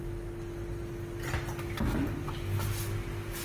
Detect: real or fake real